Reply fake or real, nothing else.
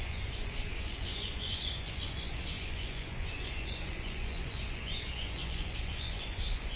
fake